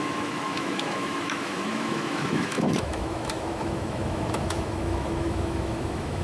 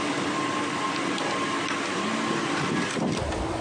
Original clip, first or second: second